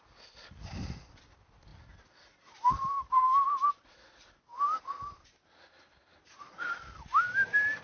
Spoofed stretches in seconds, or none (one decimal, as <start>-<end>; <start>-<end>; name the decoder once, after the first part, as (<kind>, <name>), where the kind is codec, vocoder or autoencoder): 0.6-1.1 (vocoder, BigVGAN v2); 1.7-4.8